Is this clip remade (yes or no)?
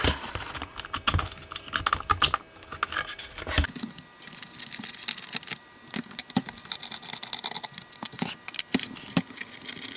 no